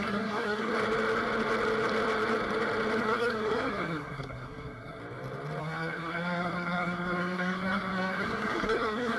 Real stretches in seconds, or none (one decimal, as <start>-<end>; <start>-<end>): 0.7-3.0; 5.0-5.6